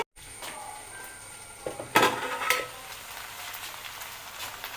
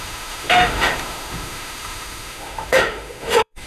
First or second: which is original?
first